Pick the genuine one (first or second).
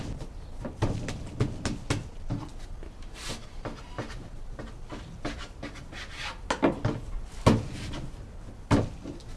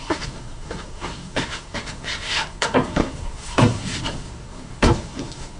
first